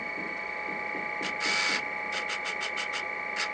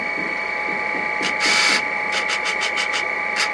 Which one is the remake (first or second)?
second